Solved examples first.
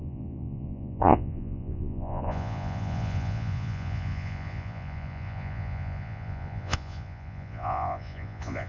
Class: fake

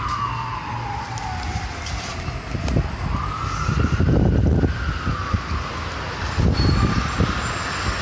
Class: real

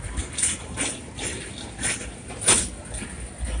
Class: real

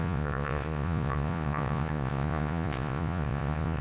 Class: fake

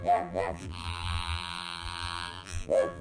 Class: fake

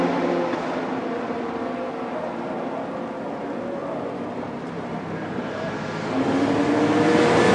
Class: real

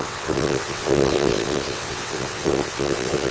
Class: fake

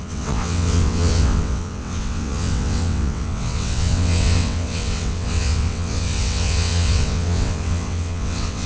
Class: fake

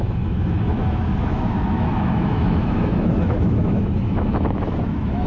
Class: fake